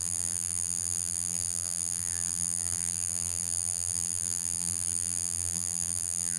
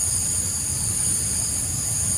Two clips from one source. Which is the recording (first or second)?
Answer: second